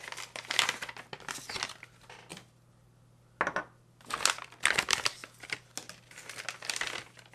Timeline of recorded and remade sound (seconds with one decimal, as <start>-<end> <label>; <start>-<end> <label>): 0.0-7.3 recorded